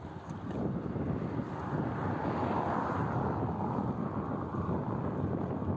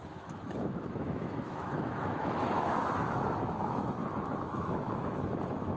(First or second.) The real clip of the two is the first